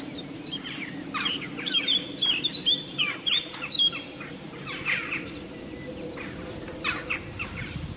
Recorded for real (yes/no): no